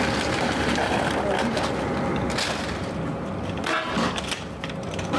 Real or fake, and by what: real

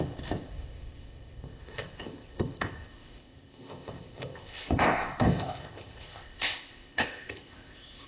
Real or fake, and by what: fake, codec, ZipCodec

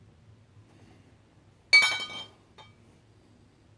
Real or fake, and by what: real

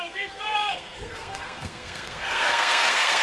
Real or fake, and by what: fake, codec, SNAC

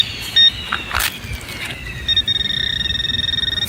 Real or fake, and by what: real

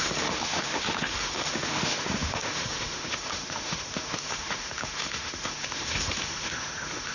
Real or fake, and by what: fake, autoencoder, DAC-VAE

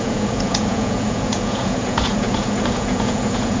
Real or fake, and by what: fake, vocoder, Vocos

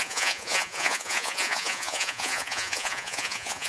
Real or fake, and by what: fake, vocoder, Vocos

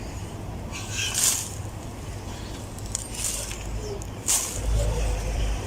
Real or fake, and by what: real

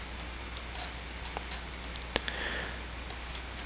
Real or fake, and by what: real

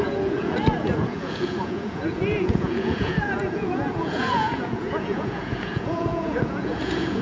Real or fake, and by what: fake, vocoder, Vocos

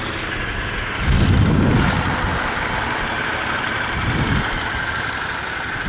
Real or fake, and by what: real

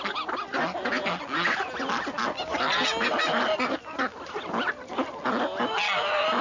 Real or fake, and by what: real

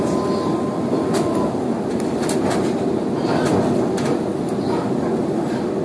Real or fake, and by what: real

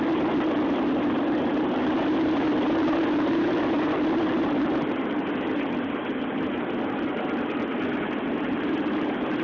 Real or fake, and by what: real